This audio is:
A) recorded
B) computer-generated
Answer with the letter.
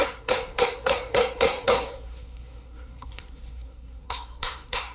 B